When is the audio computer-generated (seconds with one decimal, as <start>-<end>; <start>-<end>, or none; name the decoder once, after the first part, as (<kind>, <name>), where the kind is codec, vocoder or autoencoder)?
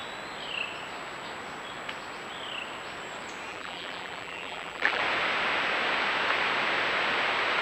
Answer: 3.5-5.0 (vocoder, BigVGAN v2)